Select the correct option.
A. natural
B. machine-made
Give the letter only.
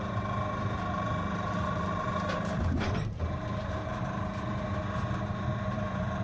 B